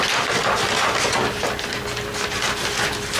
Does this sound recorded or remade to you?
recorded